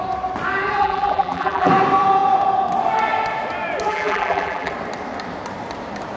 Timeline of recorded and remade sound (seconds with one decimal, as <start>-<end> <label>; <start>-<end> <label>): 0.0-0.8 recorded; 0.8-1.7 remade; 1.7-3.9 recorded; 3.9-4.7 remade; 4.7-6.2 recorded